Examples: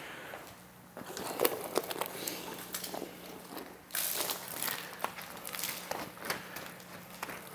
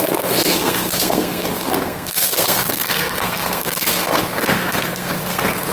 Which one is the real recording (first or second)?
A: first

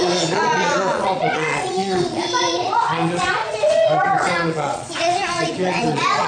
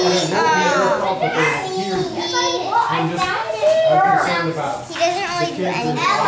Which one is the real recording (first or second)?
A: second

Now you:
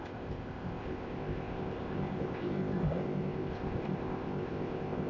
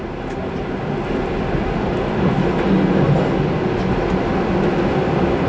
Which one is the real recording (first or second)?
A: second